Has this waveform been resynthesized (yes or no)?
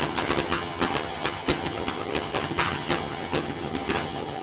yes